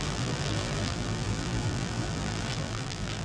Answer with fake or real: fake